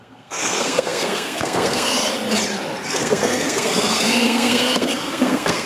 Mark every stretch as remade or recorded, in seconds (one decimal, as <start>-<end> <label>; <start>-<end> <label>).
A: 0.0-1.9 remade; 1.9-2.9 recorded; 2.9-5.7 remade